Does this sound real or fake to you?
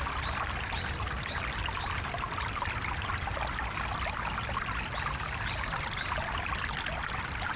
real